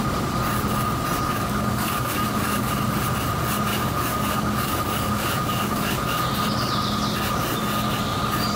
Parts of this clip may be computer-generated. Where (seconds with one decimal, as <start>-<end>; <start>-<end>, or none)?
1.3-2.7; 3.7-6.2